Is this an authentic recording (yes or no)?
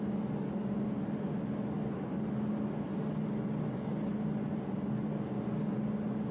yes